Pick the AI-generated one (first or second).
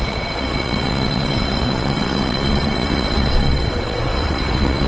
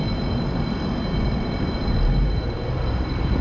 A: first